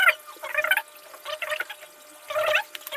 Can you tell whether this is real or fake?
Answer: real